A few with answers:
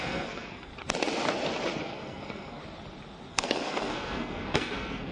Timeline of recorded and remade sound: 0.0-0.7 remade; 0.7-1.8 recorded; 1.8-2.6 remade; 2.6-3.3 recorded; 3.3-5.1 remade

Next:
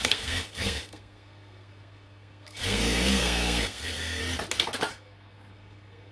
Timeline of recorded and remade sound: 0.0-4.2 remade; 4.2-4.9 recorded; 4.9-6.1 remade

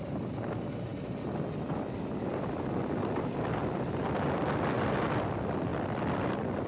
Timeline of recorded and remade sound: 0.0-0.9 recorded; 0.9-4.9 remade; 4.9-5.7 recorded; 5.7-6.3 remade; 6.3-6.7 recorded

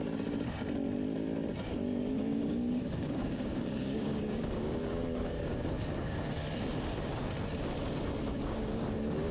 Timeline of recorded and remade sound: 0.0-1.7 recorded; 1.7-6.3 remade; 6.3-8.3 recorded; 8.3-8.9 remade; 8.9-9.3 recorded

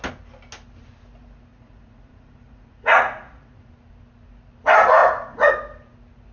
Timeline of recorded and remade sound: 0.0-1.5 recorded; 1.5-3.7 remade; 3.7-5.0 recorded; 5.0-5.5 remade; 5.5-6.3 recorded

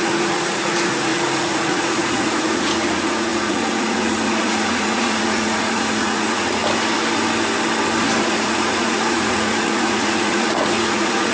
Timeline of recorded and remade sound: 0.0-6.6 remade; 6.6-8.2 recorded; 8.2-11.3 remade

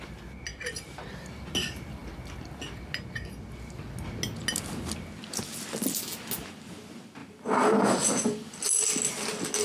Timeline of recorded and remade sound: 0.0-0.5 recorded; 0.5-1.2 remade; 1.2-7.2 recorded; 7.2-8.6 remade; 8.6-9.6 recorded

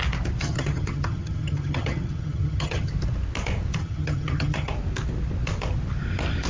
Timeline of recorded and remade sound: 0.0-0.4 recorded; 0.4-2.9 remade; 2.9-3.8 recorded; 3.8-4.7 remade; 4.7-6.5 recorded